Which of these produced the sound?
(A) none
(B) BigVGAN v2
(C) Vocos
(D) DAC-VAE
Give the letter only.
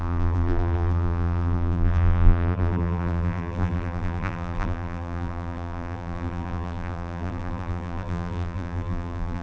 B